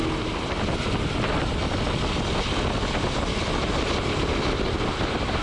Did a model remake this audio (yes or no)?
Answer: no